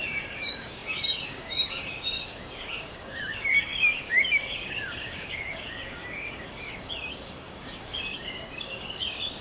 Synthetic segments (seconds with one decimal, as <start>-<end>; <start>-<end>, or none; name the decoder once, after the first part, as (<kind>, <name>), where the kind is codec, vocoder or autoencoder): 0.0-9.4 (codec, DAC)